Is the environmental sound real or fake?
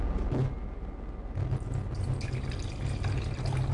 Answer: real